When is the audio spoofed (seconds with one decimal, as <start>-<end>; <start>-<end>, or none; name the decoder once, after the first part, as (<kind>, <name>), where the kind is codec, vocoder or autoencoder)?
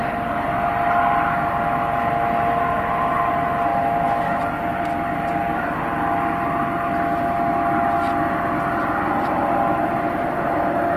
3.7-4.4 (autoencoder, DAC-VAE)